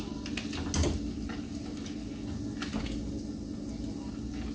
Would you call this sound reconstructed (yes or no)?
no